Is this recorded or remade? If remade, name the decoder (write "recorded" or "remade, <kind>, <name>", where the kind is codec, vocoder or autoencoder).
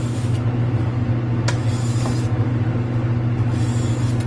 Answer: recorded